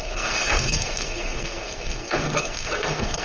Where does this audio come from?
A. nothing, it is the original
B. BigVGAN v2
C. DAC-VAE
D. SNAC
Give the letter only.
D